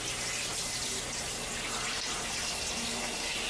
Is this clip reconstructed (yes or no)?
no